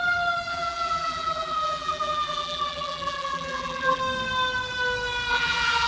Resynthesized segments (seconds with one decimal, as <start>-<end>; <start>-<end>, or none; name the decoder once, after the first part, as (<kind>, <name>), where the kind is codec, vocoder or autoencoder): 0.5-4.0 (vocoder, BigVGAN v2); 5.3-5.9